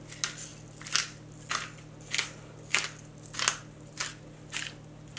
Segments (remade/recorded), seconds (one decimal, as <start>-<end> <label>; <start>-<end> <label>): 0.0-5.2 recorded